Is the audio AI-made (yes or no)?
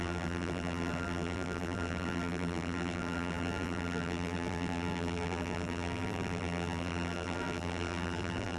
yes